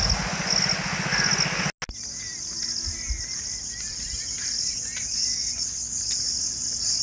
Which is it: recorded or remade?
recorded